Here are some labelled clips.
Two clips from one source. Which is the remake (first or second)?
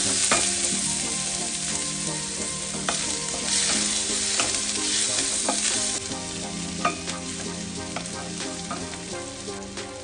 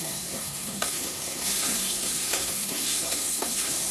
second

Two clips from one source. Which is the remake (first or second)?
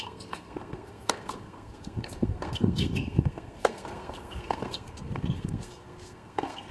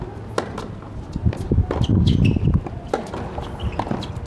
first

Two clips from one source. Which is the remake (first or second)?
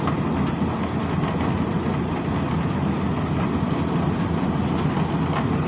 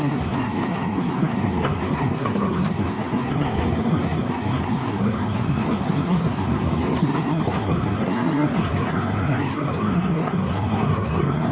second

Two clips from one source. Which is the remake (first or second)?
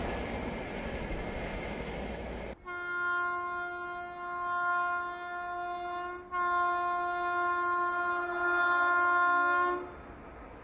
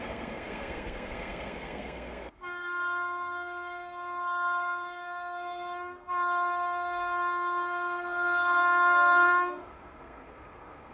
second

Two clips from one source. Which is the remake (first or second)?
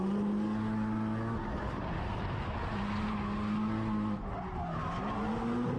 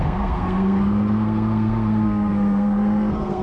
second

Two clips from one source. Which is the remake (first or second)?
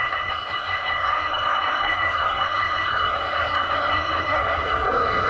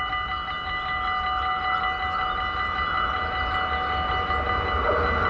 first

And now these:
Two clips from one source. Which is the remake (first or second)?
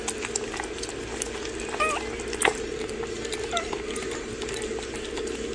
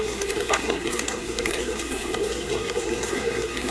second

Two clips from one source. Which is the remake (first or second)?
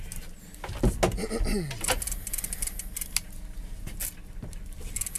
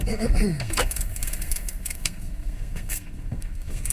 second